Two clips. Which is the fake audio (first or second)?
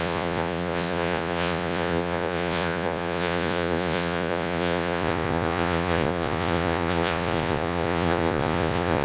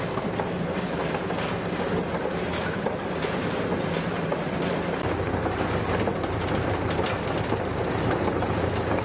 first